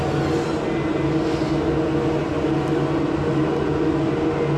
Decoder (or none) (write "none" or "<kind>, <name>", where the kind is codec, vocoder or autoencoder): none